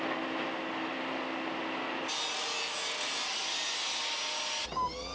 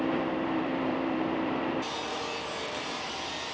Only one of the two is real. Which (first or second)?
first